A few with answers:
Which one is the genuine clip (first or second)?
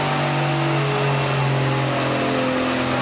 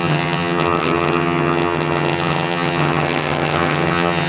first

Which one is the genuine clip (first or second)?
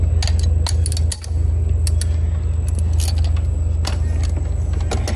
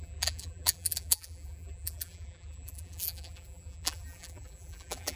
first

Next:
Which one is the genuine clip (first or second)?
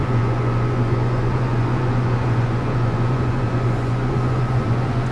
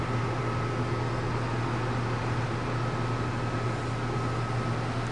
second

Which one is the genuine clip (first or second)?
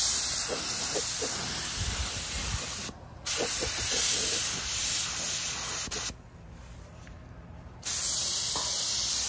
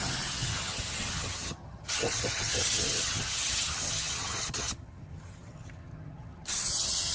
first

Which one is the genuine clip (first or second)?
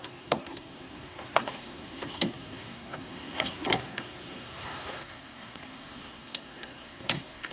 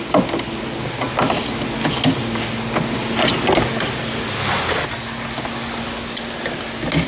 second